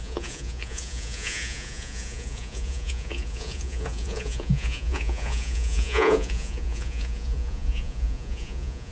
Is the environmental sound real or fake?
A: fake